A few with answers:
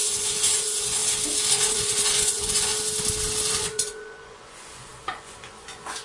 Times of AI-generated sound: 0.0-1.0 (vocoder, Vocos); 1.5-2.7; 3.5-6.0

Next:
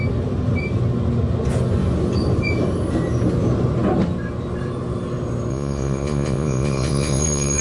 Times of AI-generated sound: 5.5-7.6 (vocoder, Vocos)

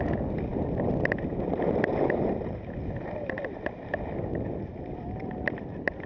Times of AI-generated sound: none

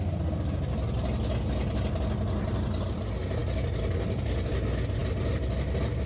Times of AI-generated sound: none

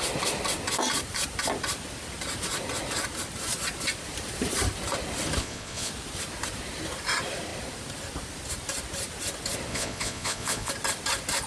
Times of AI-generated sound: 5.4-5.9 (vocoder, Vocos); 9.7-10.7

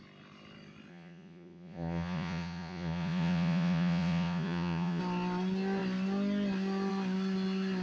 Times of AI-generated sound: 0.9-5.0 (vocoder, Vocos)